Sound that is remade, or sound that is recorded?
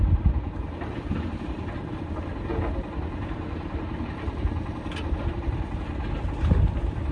recorded